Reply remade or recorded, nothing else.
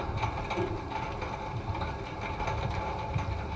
recorded